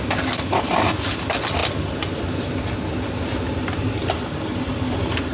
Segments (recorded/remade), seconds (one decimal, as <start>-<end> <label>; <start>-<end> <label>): 0.0-5.3 recorded